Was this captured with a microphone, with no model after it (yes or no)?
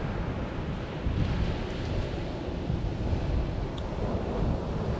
yes